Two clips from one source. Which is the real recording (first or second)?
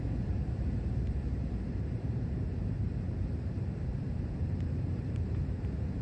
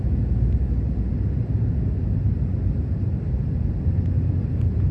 second